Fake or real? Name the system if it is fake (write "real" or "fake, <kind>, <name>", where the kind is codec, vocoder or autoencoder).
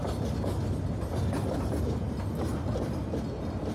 real